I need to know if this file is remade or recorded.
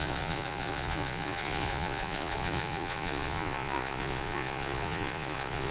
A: remade